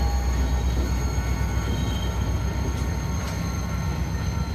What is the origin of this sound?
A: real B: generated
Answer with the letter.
A